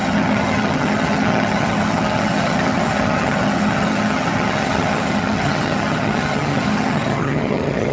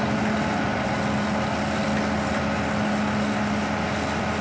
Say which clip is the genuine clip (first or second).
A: second